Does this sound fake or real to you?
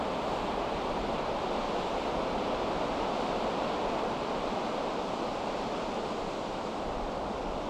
real